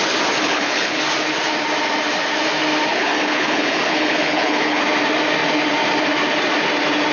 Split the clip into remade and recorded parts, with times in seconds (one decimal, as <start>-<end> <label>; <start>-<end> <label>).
0.0-0.4 recorded; 0.4-1.0 remade; 1.0-2.9 recorded; 2.9-4.8 remade; 4.8-7.1 recorded